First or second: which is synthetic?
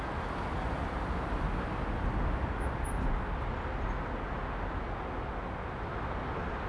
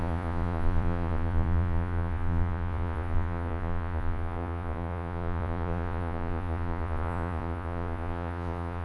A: second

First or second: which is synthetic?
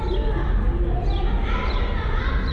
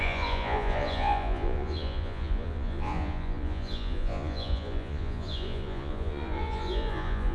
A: second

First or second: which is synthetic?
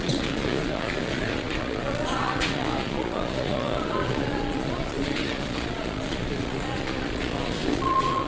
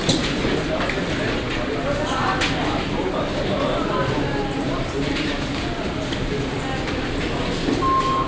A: first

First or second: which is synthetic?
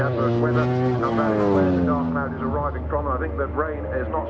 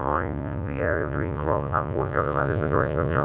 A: second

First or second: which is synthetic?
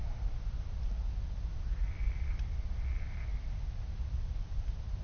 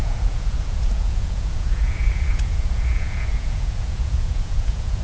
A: second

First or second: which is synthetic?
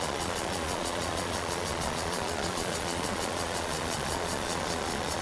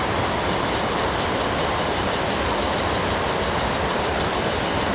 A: first